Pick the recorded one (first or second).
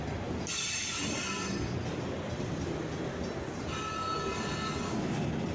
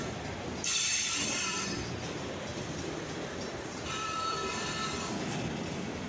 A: first